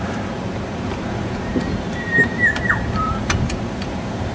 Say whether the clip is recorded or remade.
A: remade